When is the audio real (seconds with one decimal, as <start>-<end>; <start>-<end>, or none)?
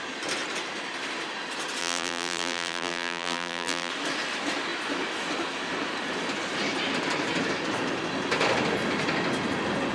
0.0-1.8; 3.9-9.9